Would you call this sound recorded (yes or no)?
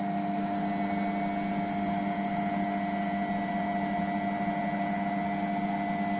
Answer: yes